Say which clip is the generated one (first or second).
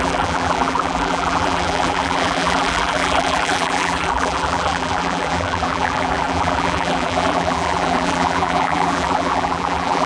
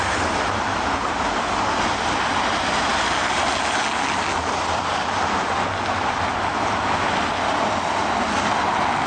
first